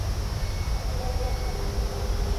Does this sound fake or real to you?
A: real